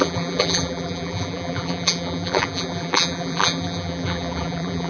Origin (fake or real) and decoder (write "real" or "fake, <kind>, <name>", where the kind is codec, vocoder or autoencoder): fake, vocoder, BigVGAN v2